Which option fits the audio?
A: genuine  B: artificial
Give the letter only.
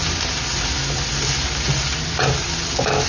A